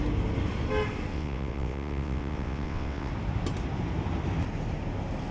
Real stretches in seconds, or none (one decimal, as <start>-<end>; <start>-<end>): 0.0-1.1; 3.1-5.3